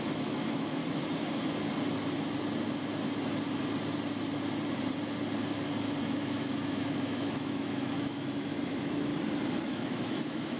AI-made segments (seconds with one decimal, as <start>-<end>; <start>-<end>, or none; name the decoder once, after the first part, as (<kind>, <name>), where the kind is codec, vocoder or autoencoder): 0.0-0.8 (autoencoder, DAC-VAE); 6.0-9.1; 9.7-10.6